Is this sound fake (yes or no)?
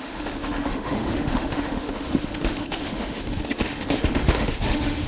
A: yes